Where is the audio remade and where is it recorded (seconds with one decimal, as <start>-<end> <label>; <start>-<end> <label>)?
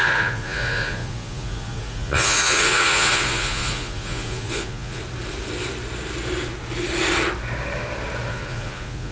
0.0-5.0 remade; 5.0-8.3 recorded; 8.3-9.1 remade